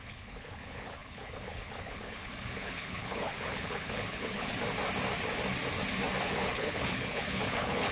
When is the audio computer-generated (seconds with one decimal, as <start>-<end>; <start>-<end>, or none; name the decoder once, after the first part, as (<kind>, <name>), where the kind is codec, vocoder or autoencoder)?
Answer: 0.0-4.5 (codec, HILCodec); 6.2-7.9